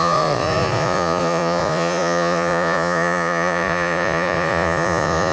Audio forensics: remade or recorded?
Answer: remade